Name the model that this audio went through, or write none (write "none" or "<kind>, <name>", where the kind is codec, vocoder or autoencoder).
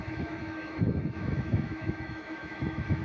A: autoencoder, DAC-VAE